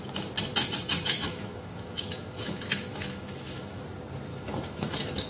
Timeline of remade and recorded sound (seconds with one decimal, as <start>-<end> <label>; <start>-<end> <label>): 0.0-0.6 recorded; 0.6-3.8 remade; 3.8-4.3 recorded; 4.3-5.3 remade

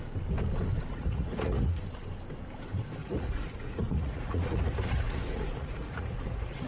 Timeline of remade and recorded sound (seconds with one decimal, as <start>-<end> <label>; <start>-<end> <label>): 0.0-0.9 recorded; 0.9-1.8 remade; 1.8-3.0 recorded; 3.0-6.7 remade

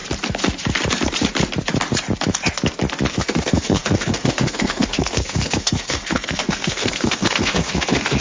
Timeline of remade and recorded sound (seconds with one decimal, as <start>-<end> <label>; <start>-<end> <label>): 0.0-3.1 recorded; 3.1-8.2 remade

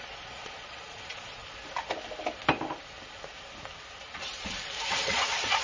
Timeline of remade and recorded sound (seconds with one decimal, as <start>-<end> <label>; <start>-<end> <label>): 0.0-1.4 remade; 1.4-4.8 recorded; 4.8-5.6 remade

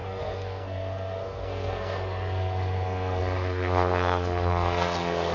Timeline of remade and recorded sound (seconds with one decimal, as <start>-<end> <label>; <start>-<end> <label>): 0.0-5.3 remade

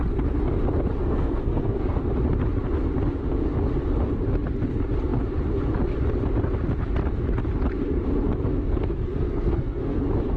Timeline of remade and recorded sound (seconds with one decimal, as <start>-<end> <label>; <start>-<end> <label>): 0.0-1.0 recorded; 1.0-2.0 remade; 2.0-8.5 recorded; 8.5-10.0 remade; 10.0-10.4 recorded

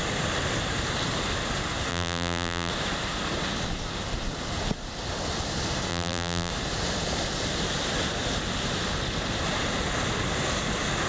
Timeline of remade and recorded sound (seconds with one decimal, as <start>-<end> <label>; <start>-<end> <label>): 0.0-1.9 recorded; 1.9-2.7 remade; 2.7-5.9 recorded; 5.9-6.5 remade; 6.5-11.1 recorded